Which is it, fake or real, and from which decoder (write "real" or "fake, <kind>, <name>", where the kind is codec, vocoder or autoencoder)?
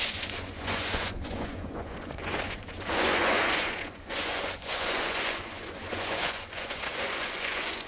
fake, vocoder, Vocos